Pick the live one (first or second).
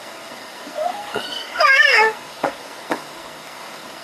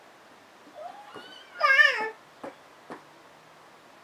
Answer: second